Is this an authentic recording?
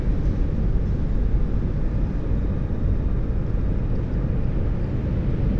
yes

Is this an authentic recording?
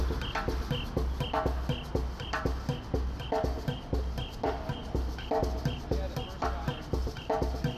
yes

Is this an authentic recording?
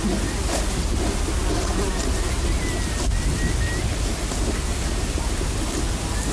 yes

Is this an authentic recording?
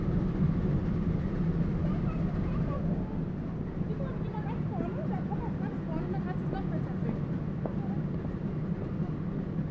yes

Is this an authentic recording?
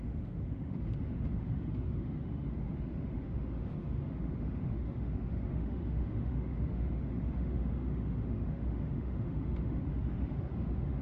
no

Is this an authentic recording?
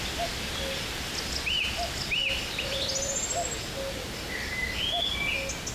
yes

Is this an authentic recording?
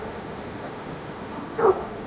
no